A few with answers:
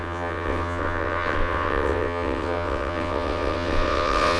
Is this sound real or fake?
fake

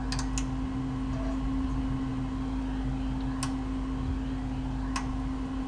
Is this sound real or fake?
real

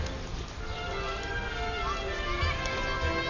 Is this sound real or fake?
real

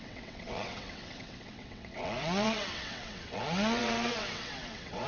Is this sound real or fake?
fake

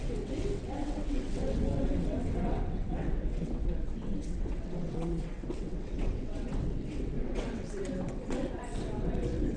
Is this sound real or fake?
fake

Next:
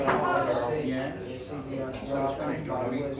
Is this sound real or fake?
real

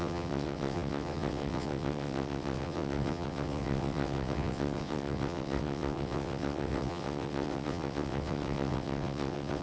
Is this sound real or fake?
fake